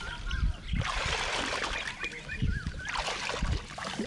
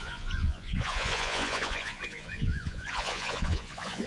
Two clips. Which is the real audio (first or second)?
first